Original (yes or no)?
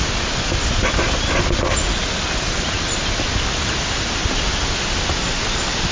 yes